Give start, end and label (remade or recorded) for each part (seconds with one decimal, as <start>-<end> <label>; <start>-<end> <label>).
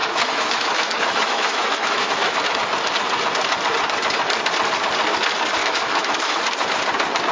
0.0-2.6 remade; 2.6-5.6 recorded; 5.6-6.4 remade; 6.4-7.3 recorded